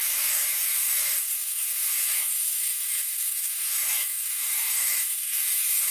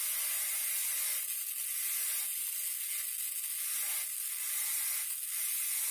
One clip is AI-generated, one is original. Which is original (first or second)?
second